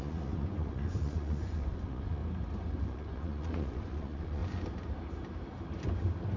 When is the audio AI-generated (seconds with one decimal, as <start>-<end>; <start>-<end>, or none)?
0.0-2.2; 2.8-4.4